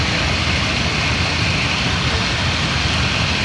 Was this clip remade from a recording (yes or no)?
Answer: no